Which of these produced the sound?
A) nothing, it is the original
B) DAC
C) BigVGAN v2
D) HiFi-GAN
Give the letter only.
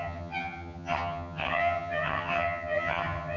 D